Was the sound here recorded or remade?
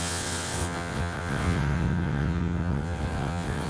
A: remade